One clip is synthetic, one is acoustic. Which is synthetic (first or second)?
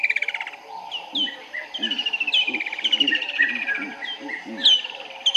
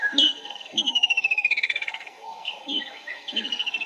second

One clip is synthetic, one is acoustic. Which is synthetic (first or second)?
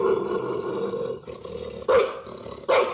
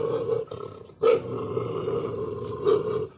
second